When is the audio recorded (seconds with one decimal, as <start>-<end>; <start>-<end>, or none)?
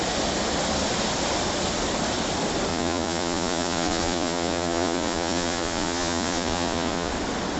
0.0-2.7; 7.1-7.6